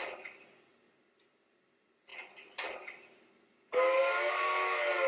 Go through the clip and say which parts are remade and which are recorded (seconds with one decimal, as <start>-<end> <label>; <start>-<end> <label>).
0.0-5.1 recorded